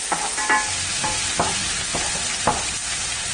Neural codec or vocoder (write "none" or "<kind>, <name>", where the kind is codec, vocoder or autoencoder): none